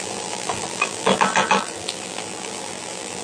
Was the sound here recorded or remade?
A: remade